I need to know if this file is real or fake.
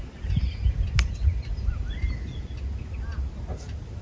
real